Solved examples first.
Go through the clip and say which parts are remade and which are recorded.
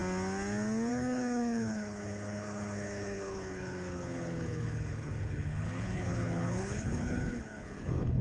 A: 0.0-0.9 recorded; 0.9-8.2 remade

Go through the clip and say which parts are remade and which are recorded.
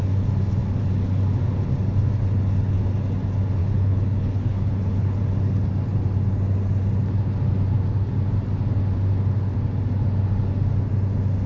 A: 0.0-3.6 recorded; 3.6-5.2 remade; 5.2-11.5 recorded